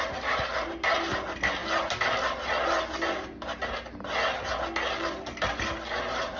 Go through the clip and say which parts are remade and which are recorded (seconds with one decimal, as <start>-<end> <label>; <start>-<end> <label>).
0.0-6.4 recorded